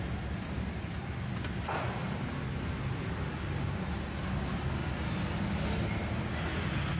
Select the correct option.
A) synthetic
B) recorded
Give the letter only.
B